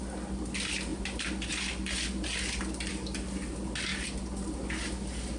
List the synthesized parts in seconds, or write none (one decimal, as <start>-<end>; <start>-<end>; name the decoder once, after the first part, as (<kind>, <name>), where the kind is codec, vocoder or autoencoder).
none